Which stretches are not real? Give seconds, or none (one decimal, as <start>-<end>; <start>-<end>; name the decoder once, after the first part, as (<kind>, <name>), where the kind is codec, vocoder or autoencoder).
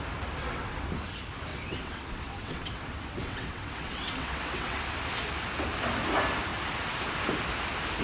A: 0.4-0.9 (vocoder, WaveNeXt); 1.5-4.8